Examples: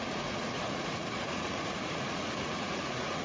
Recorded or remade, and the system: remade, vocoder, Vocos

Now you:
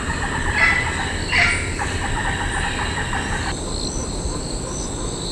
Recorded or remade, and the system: recorded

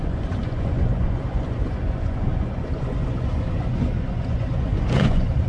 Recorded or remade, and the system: remade, vocoder, Vocos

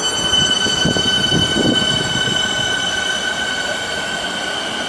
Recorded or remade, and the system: recorded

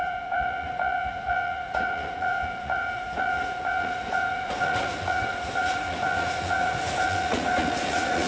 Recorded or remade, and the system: remade, vocoder, Vocos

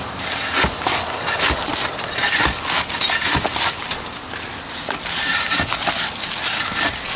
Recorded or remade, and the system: recorded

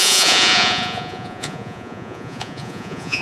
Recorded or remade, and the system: remade, vocoder, Vocos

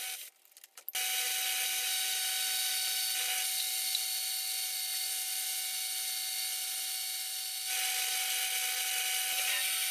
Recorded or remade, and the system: recorded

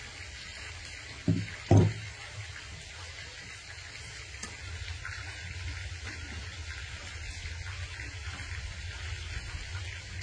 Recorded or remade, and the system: recorded